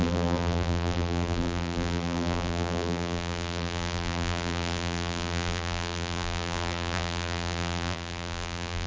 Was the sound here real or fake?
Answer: fake